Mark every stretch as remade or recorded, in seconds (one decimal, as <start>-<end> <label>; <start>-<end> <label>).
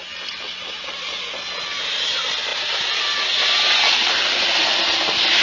0.0-5.4 recorded